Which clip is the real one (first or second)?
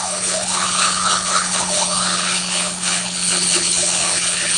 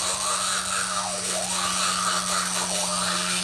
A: second